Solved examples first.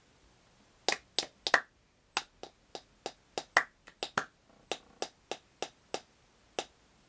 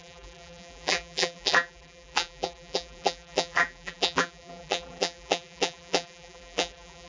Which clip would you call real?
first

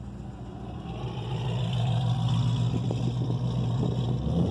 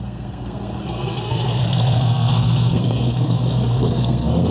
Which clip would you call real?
first